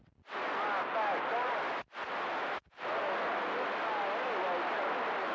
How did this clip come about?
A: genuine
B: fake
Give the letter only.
A